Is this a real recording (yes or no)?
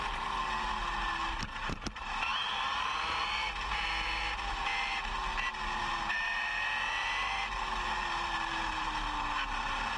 no